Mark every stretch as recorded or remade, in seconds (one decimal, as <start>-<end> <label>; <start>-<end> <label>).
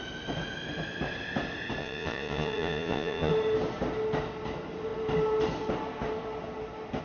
0.0-1.8 recorded; 1.8-3.3 remade; 3.3-7.0 recorded